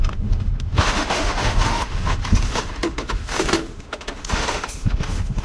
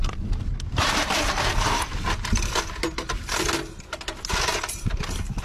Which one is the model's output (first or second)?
first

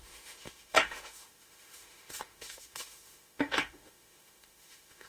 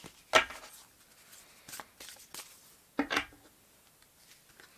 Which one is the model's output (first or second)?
first